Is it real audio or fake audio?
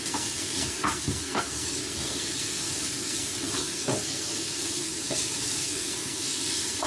fake